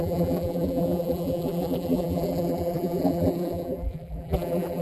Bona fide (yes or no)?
no